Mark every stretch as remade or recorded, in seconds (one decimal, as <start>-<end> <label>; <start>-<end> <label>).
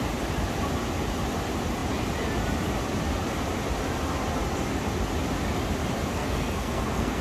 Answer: 0.0-6.1 recorded; 6.1-7.2 remade